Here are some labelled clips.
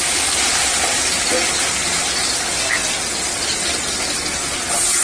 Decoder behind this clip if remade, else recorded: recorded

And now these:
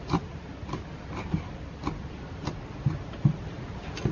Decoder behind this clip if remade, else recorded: recorded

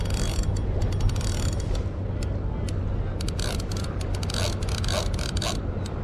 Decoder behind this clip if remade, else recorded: recorded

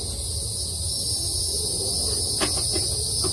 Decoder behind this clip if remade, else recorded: recorded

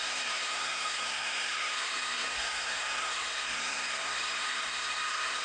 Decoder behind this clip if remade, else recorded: remade, codec, SNAC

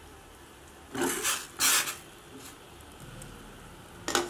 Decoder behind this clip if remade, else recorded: recorded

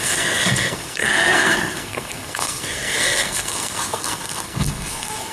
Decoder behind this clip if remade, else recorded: remade, codec, SNAC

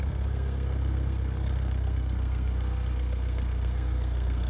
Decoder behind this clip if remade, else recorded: remade, codec, SNAC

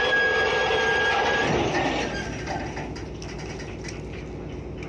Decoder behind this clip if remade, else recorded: recorded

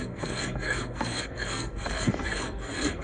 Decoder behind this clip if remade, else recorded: remade, codec, SNAC